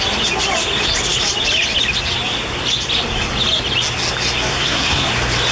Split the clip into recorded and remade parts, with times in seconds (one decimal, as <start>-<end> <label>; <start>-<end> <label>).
0.0-4.5 recorded; 4.5-5.1 remade; 5.1-5.5 recorded